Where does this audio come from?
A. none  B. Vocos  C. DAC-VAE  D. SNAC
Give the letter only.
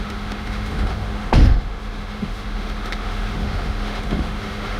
C